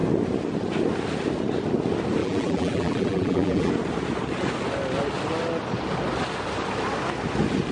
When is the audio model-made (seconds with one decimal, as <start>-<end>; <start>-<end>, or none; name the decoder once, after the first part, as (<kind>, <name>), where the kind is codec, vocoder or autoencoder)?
2.2-3.7 (vocoder, BigVGAN v2)